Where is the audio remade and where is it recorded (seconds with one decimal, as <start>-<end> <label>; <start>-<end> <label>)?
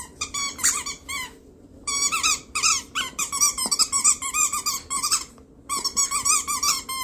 0.0-7.0 remade